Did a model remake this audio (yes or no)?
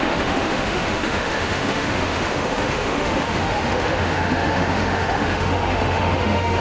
yes